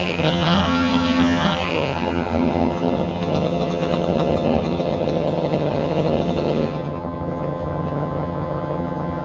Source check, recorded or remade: remade